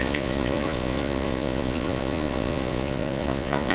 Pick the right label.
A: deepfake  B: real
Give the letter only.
A